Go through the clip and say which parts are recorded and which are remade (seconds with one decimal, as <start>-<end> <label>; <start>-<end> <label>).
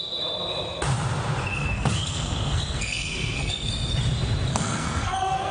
0.0-1.5 recorded; 1.5-3.7 remade; 3.7-4.5 recorded; 4.5-5.5 remade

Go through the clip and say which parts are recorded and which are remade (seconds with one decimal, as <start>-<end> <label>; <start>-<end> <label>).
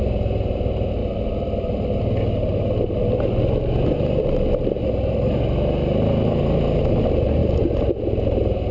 0.0-8.7 recorded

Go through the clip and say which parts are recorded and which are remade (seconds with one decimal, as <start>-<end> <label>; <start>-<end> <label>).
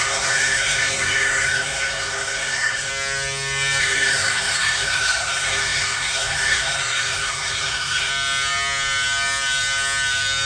0.0-2.9 remade; 2.9-3.8 recorded; 3.8-8.1 remade; 8.1-10.5 recorded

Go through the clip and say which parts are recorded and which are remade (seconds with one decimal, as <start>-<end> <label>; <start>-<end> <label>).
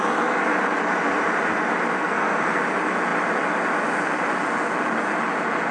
0.0-1.9 recorded; 1.9-2.6 remade; 2.6-5.7 recorded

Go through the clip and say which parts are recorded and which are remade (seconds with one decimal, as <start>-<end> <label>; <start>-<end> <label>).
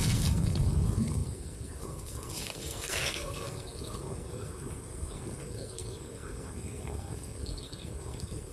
0.0-8.5 remade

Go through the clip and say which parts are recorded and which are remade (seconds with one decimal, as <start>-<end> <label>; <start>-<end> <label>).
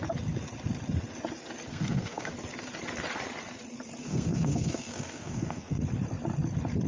0.0-1.7 recorded; 1.7-2.3 remade; 2.3-4.0 recorded; 4.0-5.8 remade; 5.8-6.9 recorded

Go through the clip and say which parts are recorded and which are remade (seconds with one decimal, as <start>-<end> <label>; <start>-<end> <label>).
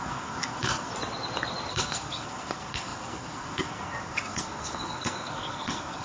0.0-0.9 remade; 0.9-1.7 recorded; 1.7-6.0 remade